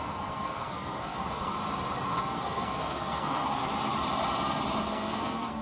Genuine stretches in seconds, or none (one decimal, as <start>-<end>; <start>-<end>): 1.6-2.2; 3.6-4.8